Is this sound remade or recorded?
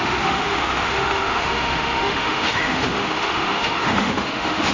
remade